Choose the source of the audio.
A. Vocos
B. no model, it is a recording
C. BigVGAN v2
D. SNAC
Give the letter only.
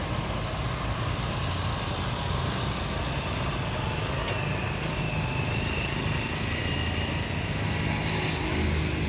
B